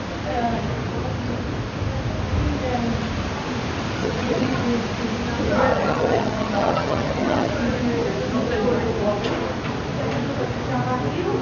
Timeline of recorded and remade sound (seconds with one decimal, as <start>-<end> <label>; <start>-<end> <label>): 0.0-4.0 recorded; 4.0-4.6 remade; 4.6-5.7 recorded; 5.7-7.5 remade; 7.5-11.4 recorded